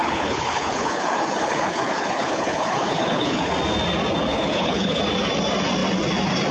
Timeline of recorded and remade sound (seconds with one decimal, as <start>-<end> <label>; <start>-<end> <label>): 0.0-3.5 remade; 3.5-4.3 recorded; 4.3-5.0 remade; 5.0-6.5 recorded